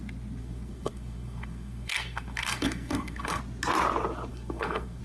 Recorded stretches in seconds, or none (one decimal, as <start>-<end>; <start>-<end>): 0.0-0.4; 3.4-4.3